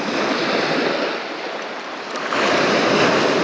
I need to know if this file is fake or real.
real